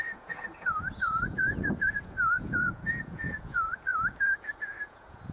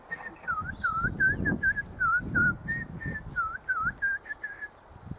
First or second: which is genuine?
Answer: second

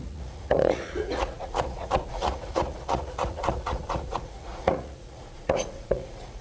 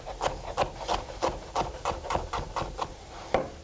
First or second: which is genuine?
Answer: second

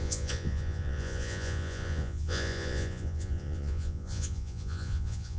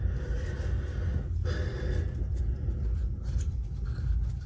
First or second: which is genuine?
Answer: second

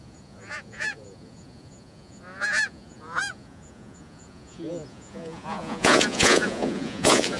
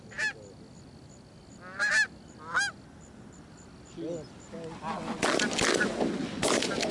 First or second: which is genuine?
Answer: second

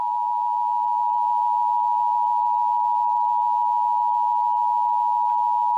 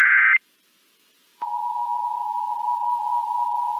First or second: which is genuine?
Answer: first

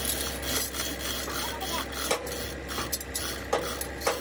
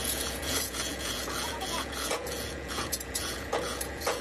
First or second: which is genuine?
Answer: first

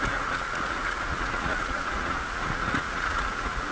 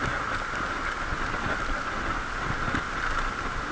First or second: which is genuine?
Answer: second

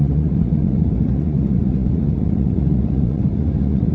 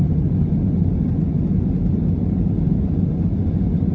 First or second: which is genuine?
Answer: second